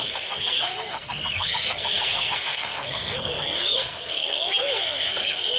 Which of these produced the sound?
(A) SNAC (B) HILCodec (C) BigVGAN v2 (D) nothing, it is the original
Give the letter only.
A